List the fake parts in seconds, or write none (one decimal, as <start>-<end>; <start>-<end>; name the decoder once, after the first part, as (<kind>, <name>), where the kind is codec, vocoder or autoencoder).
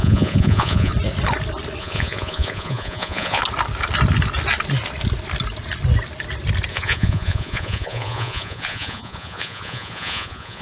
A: 0.0-0.9 (vocoder, Vocos); 1.8-3.4; 6.7-10.6